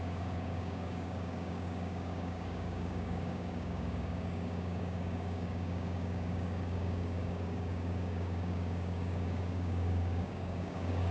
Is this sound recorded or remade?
remade